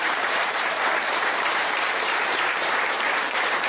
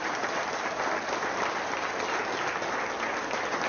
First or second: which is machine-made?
first